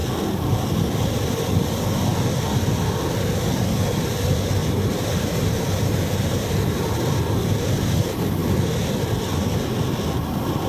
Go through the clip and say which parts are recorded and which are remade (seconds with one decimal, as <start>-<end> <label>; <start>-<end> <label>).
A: 0.0-4.6 recorded; 4.6-6.9 remade; 6.9-10.7 recorded